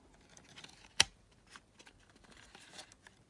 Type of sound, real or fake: real